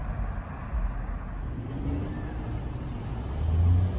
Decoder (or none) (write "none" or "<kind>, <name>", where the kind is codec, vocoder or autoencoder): none